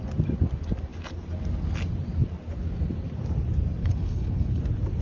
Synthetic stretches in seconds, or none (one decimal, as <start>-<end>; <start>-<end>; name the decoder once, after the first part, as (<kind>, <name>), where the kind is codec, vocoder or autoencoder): 3.8-4.6 (codec, HILCodec)

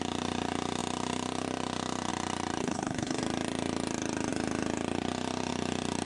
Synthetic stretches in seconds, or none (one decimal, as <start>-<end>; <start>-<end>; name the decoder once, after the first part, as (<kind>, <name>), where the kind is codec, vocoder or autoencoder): 2.6-3.2 (codec, HILCodec)

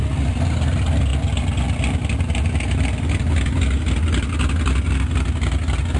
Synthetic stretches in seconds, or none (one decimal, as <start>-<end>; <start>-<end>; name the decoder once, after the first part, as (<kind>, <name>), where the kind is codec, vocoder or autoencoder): none

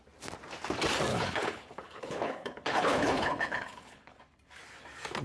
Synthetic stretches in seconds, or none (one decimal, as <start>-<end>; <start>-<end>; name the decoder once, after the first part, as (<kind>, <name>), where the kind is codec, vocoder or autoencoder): 1.1-4.2 (codec, HILCodec)

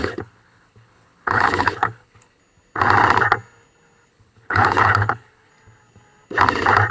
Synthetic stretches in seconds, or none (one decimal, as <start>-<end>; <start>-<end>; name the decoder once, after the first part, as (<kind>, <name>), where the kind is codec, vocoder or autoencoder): 0.0-2.4 (codec, HILCodec); 4.1-5.5

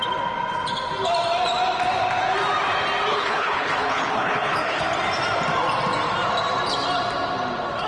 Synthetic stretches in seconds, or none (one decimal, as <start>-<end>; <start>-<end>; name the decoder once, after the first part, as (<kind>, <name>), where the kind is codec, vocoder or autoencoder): 3.1-4.8 (codec, HILCodec)